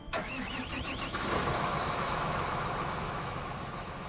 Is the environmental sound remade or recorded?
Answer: remade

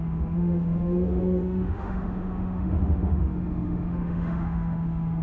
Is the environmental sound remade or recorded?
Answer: remade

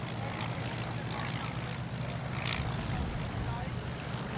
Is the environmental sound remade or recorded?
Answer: recorded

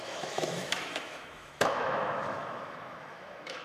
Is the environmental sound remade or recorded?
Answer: remade